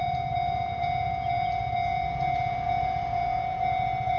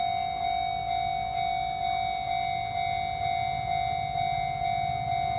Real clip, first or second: second